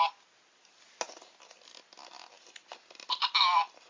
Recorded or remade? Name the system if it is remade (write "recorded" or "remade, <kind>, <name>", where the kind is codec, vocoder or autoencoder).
recorded